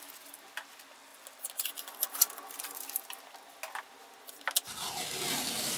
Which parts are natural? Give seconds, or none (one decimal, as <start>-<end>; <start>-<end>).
0.0-5.8